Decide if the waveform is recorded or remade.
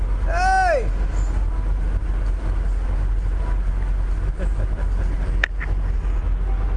recorded